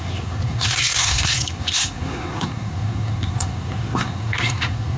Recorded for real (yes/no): no